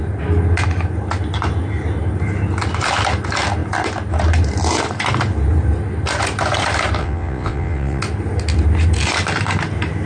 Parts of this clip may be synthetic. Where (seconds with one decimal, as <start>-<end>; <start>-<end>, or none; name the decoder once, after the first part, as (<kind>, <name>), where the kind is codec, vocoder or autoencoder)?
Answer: 7.0-8.0 (vocoder, WaveNeXt)